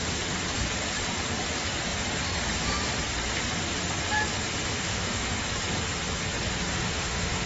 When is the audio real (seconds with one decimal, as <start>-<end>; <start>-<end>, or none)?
0.0-4.7; 5.4-6.7